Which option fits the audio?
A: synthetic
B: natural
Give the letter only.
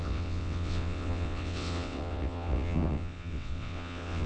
A